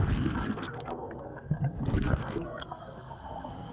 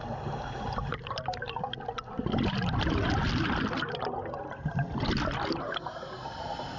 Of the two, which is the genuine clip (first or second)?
second